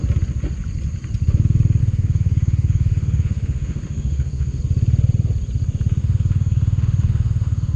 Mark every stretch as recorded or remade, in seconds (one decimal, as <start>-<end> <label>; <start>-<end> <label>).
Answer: 0.0-1.8 recorded; 1.8-4.6 remade; 4.6-6.0 recorded; 6.0-7.8 remade